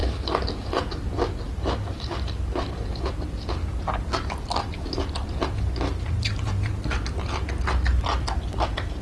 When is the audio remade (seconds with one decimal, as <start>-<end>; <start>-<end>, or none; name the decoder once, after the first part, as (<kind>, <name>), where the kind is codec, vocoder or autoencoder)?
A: 5.9-6.7 (vocoder, BigVGAN v2)